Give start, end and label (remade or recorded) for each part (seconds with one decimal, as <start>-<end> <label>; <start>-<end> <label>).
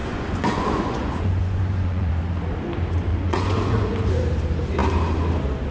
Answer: 0.0-2.1 remade; 2.1-3.1 recorded; 3.1-4.1 remade; 4.1-5.7 recorded